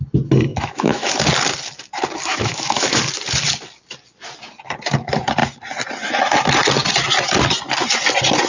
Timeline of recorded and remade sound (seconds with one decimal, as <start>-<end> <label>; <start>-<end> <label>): 0.0-0.5 recorded; 0.5-1.1 remade; 1.1-2.3 recorded; 2.3-3.0 remade; 3.0-8.5 recorded